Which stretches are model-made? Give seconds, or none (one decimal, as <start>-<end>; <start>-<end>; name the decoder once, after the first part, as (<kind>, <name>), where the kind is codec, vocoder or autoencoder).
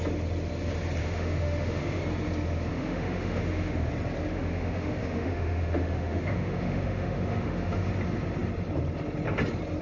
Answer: 1.0-2.0 (autoencoder, DAC-VAE); 2.7-3.9; 4.3-7.9